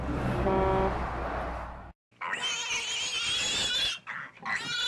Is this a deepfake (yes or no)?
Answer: no